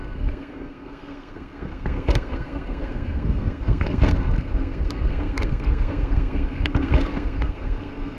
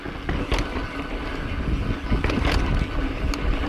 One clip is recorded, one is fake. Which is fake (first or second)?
first